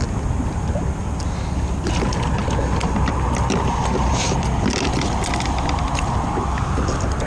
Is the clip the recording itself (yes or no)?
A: yes